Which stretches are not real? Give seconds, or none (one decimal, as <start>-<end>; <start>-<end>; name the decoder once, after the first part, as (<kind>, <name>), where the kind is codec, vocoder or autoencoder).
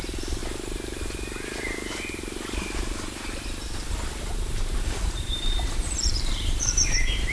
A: 0.0-0.4 (vocoder, BigVGAN v2); 4.8-7.3